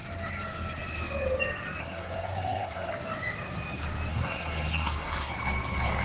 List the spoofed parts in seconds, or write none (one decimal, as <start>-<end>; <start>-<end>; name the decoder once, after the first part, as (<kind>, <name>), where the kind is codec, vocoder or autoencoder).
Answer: 1.8-2.9 (codec, SNAC); 4.1-5.3